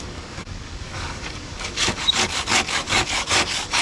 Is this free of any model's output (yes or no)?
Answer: no